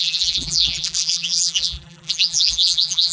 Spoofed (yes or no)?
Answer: yes